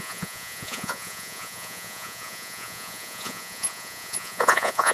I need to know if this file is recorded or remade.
remade